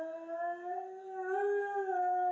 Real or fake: real